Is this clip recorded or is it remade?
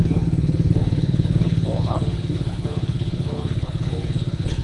remade